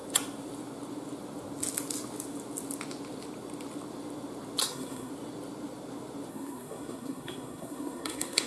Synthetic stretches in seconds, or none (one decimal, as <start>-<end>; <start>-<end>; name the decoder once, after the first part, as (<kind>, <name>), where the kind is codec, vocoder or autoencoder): 4.6-5.1 (codec, SNAC); 6.3-8.5